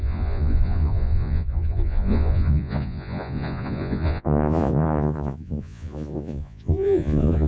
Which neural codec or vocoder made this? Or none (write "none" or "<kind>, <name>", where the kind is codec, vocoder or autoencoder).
vocoder, Vocos